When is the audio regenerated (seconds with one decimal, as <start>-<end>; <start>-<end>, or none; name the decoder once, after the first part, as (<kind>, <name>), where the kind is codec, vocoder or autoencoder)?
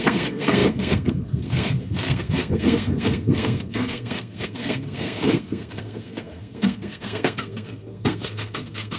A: 0.0-9.0 (codec, SNAC)